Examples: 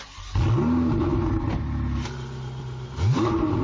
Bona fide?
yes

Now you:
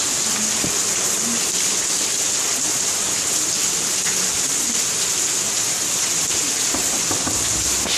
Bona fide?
yes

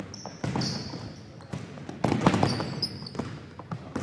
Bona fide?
yes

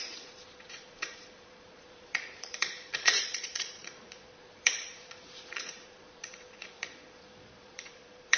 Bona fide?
no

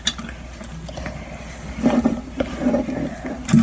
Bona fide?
yes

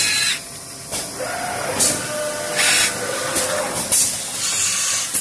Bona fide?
yes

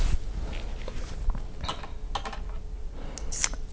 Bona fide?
yes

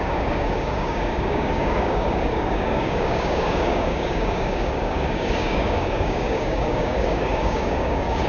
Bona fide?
no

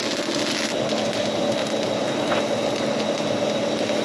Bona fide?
yes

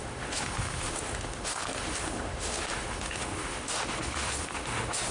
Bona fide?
no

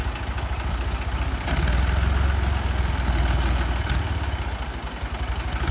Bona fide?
yes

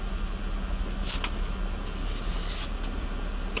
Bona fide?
yes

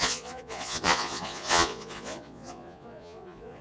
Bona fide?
no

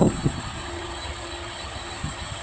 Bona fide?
no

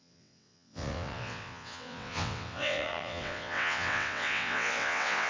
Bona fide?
no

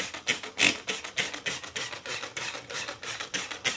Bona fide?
yes